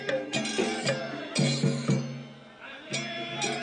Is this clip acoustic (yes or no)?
yes